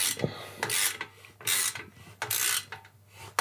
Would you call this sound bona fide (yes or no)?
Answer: yes